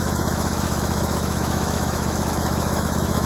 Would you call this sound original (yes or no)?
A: no